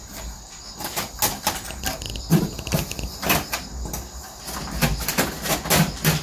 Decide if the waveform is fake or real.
real